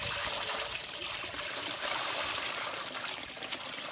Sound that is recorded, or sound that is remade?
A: recorded